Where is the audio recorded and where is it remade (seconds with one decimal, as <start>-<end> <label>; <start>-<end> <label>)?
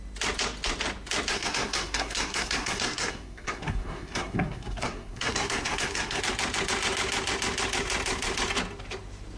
0.0-1.3 recorded; 1.3-6.2 remade; 6.2-9.4 recorded